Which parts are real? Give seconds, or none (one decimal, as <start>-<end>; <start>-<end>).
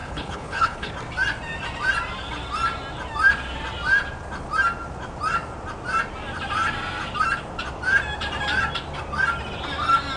0.9-10.2